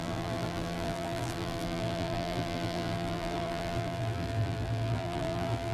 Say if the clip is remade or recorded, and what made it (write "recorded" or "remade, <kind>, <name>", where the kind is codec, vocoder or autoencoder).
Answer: remade, vocoder, BigVGAN v2